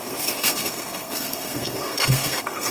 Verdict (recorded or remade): remade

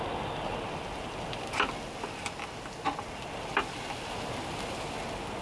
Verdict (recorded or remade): recorded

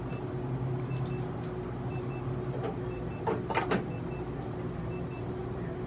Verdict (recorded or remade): recorded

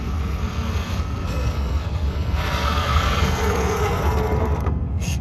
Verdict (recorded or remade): remade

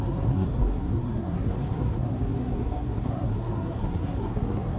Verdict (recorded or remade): remade